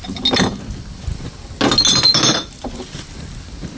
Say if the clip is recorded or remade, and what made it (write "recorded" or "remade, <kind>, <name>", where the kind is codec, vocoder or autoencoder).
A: recorded